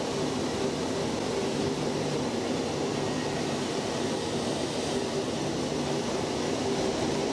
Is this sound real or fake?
fake